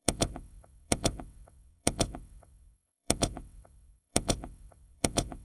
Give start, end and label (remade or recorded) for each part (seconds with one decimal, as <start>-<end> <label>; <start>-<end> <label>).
0.0-5.4 remade